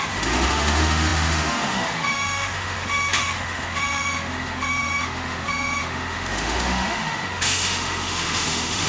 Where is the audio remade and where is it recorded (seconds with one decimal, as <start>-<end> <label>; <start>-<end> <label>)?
0.0-8.9 remade